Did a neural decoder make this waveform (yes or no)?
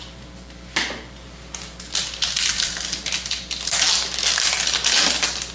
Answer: no